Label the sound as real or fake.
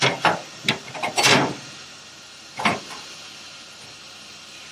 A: fake